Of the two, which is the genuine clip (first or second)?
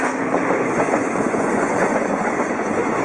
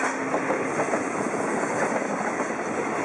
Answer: second